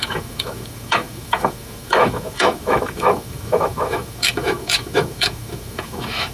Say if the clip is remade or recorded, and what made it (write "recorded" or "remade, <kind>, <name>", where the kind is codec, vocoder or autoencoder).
remade, autoencoder, DAC-VAE